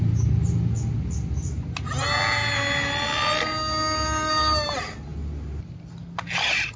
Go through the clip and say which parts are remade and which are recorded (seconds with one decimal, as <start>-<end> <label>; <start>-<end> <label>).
0.0-6.8 recorded